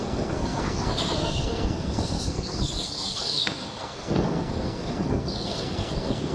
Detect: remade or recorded remade